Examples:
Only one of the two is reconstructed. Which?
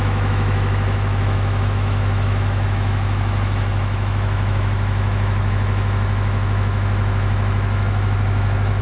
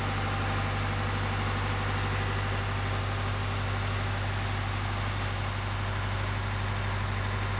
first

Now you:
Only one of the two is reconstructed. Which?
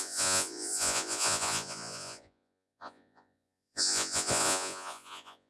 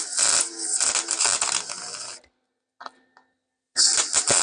first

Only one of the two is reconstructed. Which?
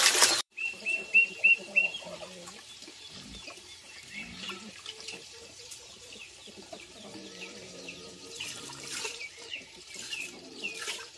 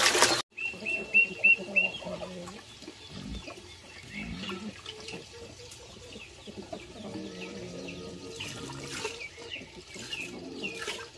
first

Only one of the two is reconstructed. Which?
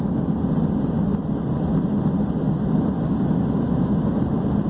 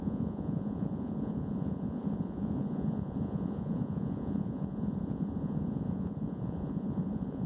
second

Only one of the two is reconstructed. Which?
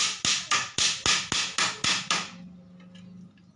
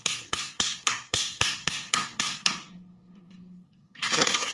second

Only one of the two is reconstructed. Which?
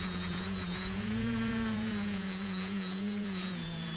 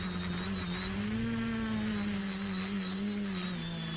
first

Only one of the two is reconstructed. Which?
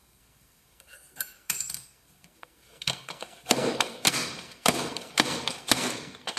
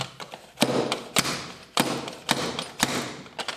first